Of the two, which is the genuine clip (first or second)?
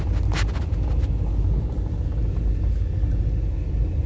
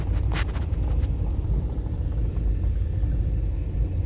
first